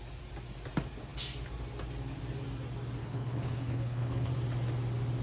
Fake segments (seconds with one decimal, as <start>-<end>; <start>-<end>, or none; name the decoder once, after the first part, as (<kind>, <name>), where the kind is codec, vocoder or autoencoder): 3.0-4.3 (codec, HILCodec)